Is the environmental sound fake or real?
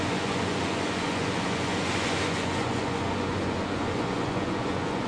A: fake